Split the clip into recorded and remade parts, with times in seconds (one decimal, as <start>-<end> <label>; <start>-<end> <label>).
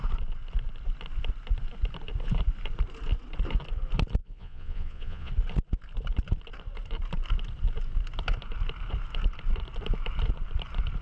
0.0-4.2 recorded; 4.2-5.3 remade; 5.3-11.0 recorded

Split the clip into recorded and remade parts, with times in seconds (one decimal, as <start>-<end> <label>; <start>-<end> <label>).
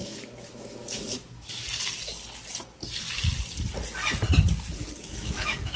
0.0-1.6 remade; 1.6-5.0 recorded; 5.0-5.8 remade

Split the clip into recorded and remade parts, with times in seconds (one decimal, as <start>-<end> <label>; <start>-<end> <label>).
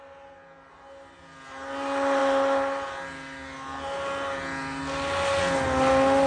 0.0-6.3 recorded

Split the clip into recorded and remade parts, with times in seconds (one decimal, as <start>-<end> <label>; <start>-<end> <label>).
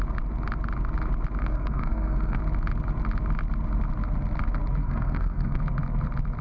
0.0-1.4 recorded; 1.4-2.4 remade; 2.4-4.8 recorded; 4.8-5.6 remade; 5.6-6.4 recorded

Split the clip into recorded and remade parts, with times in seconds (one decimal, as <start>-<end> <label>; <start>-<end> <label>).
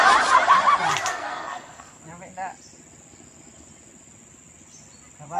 0.0-1.1 recorded; 1.1-2.0 remade; 2.0-5.4 recorded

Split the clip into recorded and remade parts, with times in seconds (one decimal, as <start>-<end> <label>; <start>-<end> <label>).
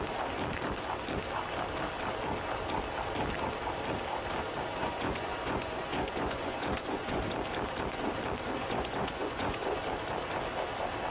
0.0-4.8 recorded; 4.8-7.2 remade; 7.2-8.6 recorded; 8.6-9.8 remade; 9.8-11.1 recorded